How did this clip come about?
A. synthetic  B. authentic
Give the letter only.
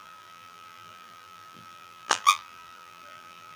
A